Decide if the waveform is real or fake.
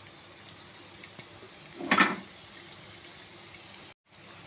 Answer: real